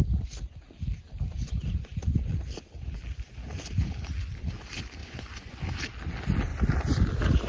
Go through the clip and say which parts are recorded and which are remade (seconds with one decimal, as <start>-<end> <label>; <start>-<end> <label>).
0.0-5.0 recorded; 5.0-5.6 remade; 5.6-7.5 recorded